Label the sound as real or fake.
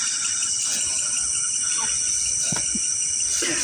real